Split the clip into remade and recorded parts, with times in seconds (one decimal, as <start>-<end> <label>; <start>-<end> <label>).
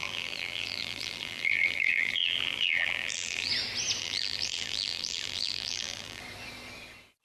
0.0-3.5 remade; 3.5-4.0 recorded; 4.0-6.2 remade; 6.2-7.2 recorded